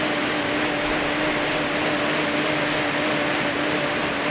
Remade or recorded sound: recorded